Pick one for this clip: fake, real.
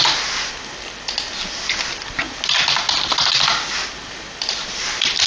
real